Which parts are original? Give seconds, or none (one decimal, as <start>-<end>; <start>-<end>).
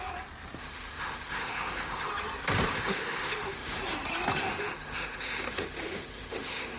0.0-0.6; 2.1-2.7; 3.8-4.4